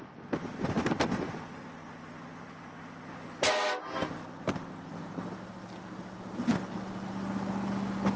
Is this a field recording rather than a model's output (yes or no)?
yes